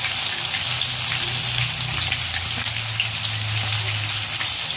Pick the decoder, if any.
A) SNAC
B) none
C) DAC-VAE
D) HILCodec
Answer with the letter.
B